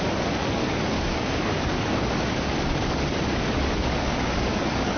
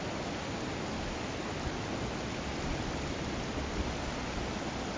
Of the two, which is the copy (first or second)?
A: first